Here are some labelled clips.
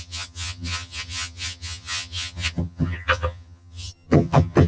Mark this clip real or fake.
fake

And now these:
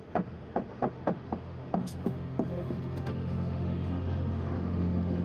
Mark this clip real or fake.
fake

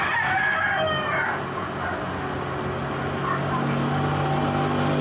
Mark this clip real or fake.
real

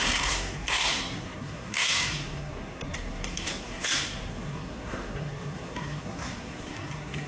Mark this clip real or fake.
fake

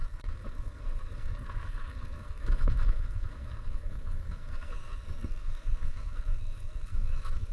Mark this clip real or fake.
fake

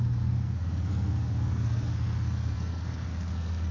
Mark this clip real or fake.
fake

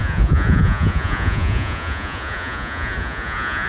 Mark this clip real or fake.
fake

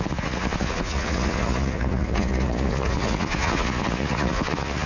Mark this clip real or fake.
fake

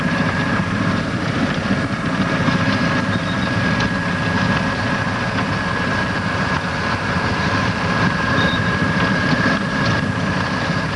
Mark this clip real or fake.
fake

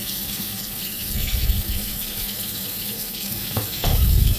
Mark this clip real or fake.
fake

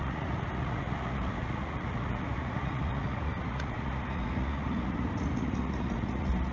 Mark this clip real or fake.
fake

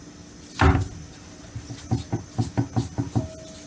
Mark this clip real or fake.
real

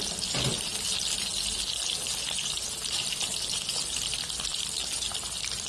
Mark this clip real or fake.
real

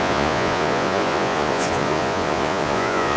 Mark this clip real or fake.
fake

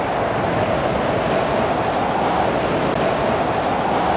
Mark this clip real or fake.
real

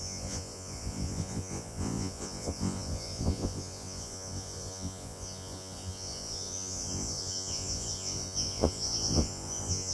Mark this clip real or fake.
fake